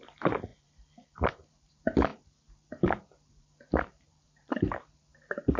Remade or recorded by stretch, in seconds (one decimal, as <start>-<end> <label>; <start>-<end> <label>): 0.0-0.5 recorded; 0.5-1.7 remade; 1.7-2.1 recorded; 2.1-5.6 remade